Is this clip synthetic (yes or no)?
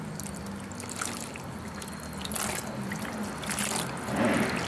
no